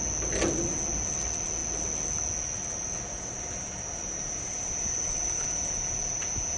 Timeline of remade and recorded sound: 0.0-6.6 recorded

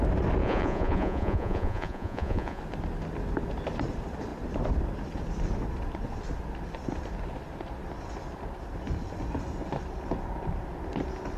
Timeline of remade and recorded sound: 0.0-0.4 recorded; 0.4-2.6 remade; 2.6-11.4 recorded

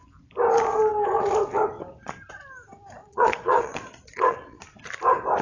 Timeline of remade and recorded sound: 0.0-3.0 recorded; 3.0-4.6 remade; 4.6-5.4 recorded

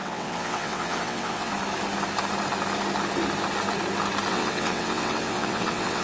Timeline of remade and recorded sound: 0.0-1.5 remade; 1.5-4.3 recorded; 4.3-6.0 remade

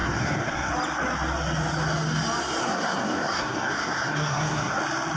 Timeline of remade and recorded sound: 0.0-0.7 remade; 0.7-2.6 recorded; 2.6-4.8 remade; 4.8-5.2 recorded

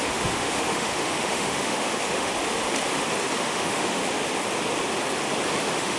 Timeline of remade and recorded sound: 0.0-2.3 remade; 2.3-3.4 recorded; 3.4-4.0 remade; 4.0-5.6 recorded; 5.6-6.0 remade